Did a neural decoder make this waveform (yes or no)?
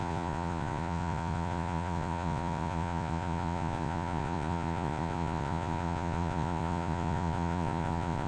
yes